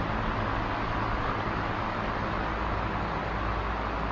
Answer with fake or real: real